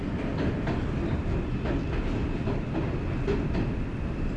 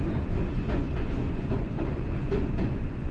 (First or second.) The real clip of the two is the first